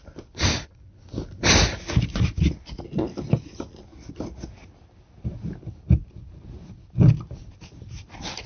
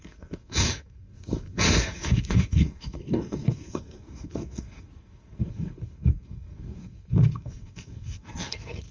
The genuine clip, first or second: first